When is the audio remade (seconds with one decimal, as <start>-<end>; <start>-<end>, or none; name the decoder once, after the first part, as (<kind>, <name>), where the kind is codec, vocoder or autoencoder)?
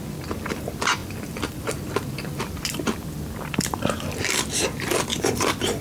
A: 1.0-4.4 (vocoder, BigVGAN v2); 5.1-5.8